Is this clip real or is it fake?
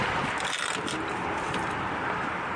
real